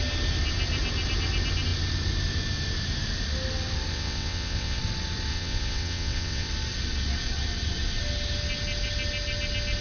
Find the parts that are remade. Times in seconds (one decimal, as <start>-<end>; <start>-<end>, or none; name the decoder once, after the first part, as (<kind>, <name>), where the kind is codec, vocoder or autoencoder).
3.9-4.8 (vocoder, WaveNeXt); 5.3-6.5